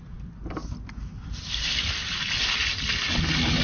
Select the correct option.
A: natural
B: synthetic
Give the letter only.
A